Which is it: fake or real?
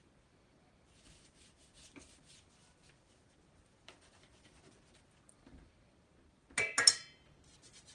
real